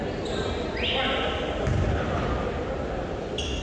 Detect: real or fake real